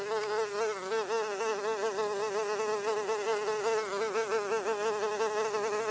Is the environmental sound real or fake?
real